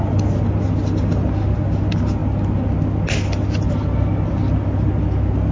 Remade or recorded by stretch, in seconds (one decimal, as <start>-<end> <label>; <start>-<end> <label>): 0.0-5.5 recorded